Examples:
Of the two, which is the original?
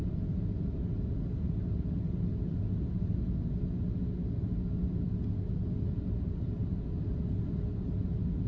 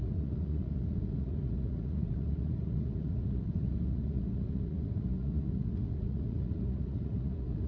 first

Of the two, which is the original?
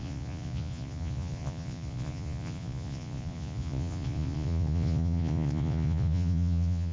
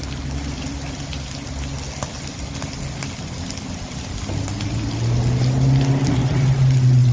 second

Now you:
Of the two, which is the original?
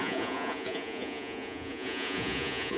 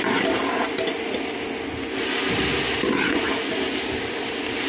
second